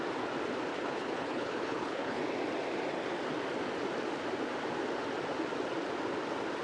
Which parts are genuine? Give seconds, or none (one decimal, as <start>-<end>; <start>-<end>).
0.0-0.7; 2.2-6.6